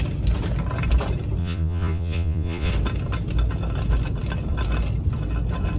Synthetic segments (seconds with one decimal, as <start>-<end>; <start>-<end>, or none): 1.4-2.7